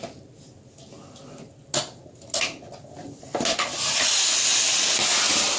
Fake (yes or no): no